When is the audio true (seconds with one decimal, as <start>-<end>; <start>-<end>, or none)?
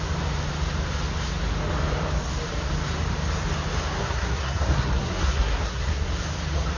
0.0-4.0; 6.1-6.8